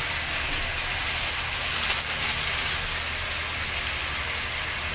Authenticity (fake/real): real